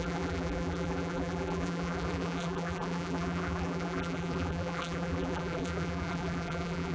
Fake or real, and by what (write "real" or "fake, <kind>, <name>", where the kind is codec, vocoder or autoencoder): fake, vocoder, BigVGAN v2